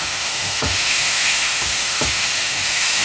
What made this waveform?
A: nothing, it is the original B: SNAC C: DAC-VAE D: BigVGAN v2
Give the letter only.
C